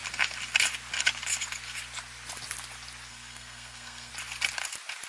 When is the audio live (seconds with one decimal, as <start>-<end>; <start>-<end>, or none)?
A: 0.0-3.1; 4.1-5.1